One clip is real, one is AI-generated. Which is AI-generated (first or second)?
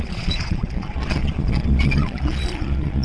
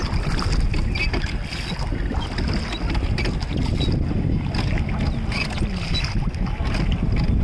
first